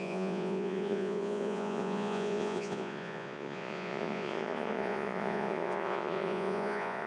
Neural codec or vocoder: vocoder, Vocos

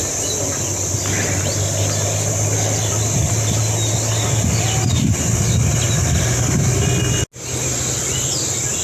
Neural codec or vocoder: none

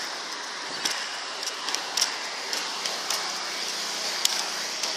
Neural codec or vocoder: none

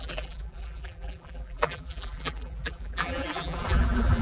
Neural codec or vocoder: vocoder, BigVGAN v2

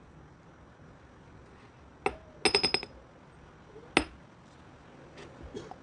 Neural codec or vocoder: none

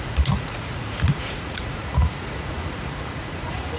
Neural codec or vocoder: vocoder, Vocos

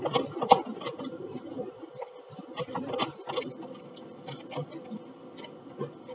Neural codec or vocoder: none